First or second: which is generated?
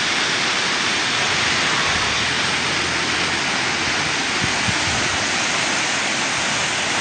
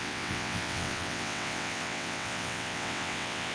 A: second